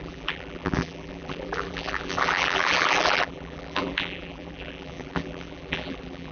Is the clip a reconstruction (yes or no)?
yes